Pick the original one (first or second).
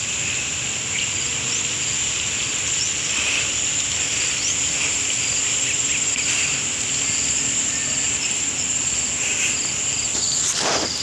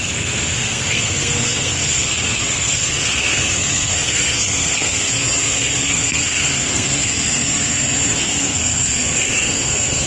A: first